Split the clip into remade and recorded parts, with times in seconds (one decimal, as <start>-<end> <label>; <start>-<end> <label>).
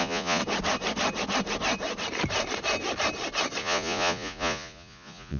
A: 0.0-0.4 remade; 0.4-3.6 recorded; 3.6-5.4 remade